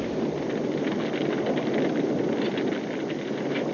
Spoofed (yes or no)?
no